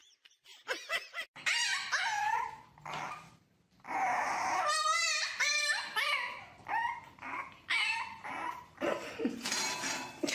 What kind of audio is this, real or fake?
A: fake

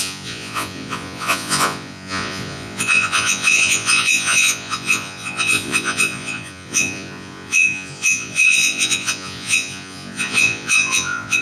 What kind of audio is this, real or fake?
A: fake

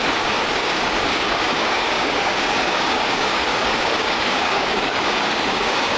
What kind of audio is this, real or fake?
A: fake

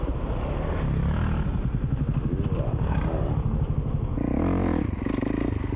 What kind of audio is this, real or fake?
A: real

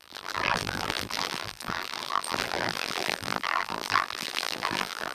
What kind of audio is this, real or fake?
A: fake